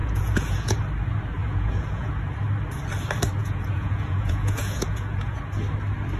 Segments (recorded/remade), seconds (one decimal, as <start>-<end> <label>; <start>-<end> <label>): 0.0-0.8 remade; 0.8-1.4 recorded; 1.4-2.1 remade; 2.1-3.4 recorded; 3.4-5.4 remade; 5.4-6.2 recorded